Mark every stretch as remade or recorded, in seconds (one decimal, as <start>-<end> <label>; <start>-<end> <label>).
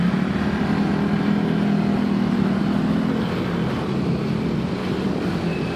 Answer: 0.0-4.8 recorded; 4.8-5.8 remade